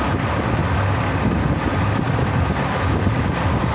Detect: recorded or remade recorded